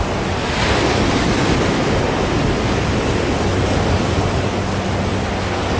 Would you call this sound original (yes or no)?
yes